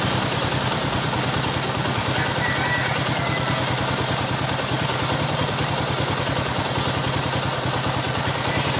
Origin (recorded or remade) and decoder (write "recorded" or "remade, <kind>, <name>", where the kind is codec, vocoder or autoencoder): recorded